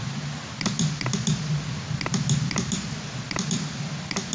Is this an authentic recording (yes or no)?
yes